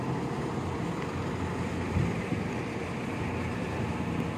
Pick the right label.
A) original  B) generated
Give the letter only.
A